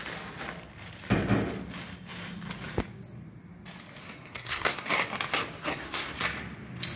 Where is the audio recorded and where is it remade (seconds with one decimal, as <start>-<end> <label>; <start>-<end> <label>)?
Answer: 0.0-4.0 recorded; 4.0-4.9 remade; 4.9-5.7 recorded; 5.7-6.2 remade; 6.2-7.0 recorded